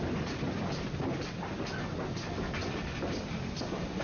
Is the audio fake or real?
real